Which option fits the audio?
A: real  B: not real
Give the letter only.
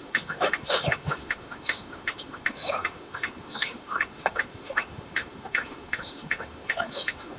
B